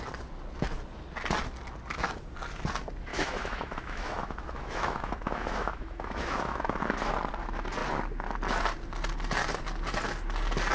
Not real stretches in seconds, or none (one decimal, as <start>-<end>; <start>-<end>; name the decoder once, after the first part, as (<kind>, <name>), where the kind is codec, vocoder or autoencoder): 3.1-7.1 (autoencoder, DAC-VAE)